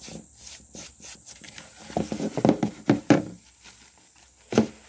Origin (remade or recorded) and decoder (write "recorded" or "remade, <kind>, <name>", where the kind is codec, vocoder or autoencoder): recorded